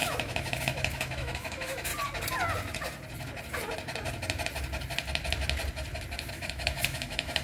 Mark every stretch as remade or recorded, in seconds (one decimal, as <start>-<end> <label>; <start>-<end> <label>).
0.0-1.9 remade; 1.9-6.3 recorded; 6.3-7.4 remade